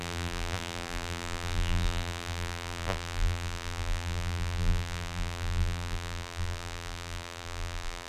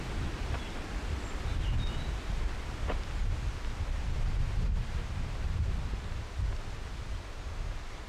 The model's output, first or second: first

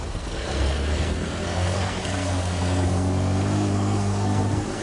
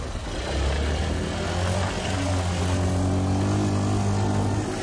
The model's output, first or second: first